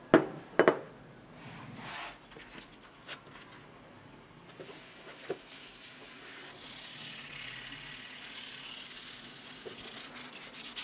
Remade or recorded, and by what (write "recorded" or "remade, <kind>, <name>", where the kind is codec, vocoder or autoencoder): recorded